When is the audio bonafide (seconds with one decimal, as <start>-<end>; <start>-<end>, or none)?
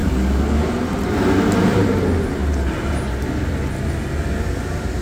0.6-5.0